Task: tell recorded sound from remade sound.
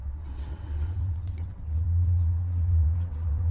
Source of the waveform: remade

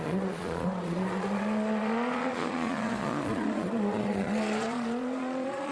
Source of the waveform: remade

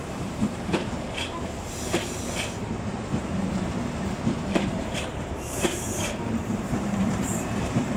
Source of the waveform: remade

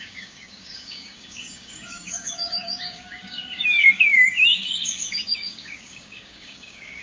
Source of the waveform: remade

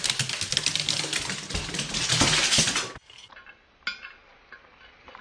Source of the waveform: recorded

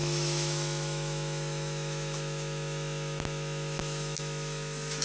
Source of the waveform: remade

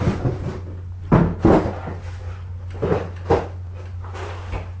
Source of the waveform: recorded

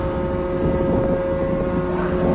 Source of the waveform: recorded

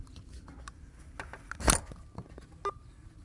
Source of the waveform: recorded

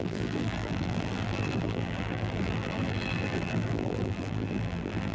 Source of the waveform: remade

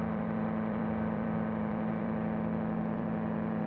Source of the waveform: remade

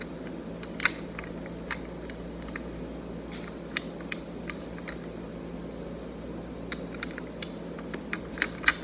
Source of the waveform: recorded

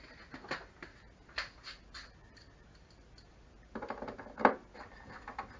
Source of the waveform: recorded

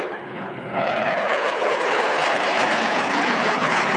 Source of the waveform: remade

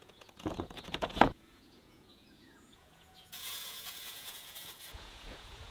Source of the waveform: remade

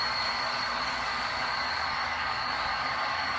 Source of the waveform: remade